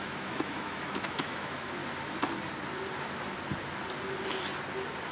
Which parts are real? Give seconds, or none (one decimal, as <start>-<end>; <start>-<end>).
1.8-5.1